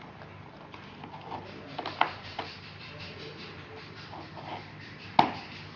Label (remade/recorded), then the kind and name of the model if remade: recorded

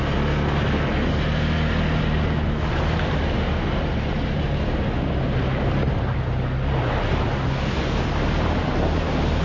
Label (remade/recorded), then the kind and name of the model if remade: recorded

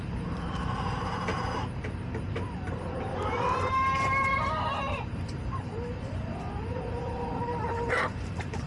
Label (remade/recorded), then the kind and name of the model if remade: remade, vocoder, BigVGAN v2